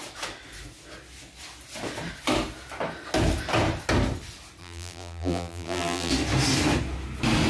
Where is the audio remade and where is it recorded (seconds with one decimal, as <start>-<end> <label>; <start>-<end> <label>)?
0.0-4.6 recorded; 4.6-6.1 remade; 6.1-7.5 recorded